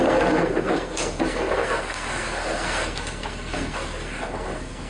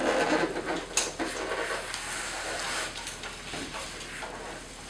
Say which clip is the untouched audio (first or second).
second